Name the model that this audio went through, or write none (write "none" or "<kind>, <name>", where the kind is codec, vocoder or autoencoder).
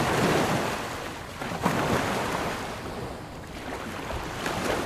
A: none